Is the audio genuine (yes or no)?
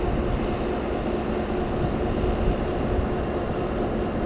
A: yes